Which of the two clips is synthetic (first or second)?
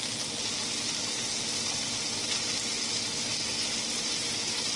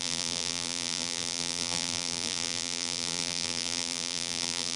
second